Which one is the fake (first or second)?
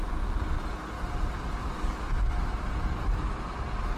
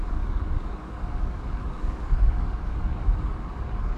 second